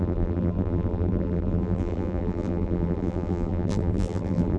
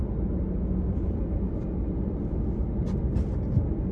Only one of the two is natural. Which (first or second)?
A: second